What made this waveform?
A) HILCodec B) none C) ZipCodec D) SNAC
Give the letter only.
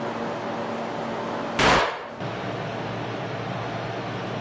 B